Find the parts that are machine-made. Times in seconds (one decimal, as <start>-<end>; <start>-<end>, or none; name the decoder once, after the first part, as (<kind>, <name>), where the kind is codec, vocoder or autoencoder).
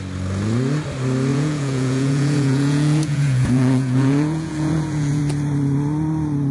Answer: 1.3-5.2 (vocoder, Vocos)